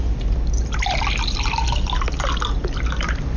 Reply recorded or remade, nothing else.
recorded